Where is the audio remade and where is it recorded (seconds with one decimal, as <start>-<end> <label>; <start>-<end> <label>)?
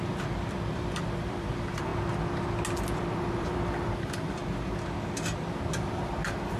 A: 0.0-1.9 remade; 1.9-2.9 recorded; 2.9-4.4 remade; 4.4-5.5 recorded; 5.5-6.6 remade